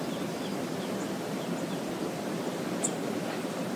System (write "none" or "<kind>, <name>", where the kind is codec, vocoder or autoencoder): vocoder, BigVGAN v2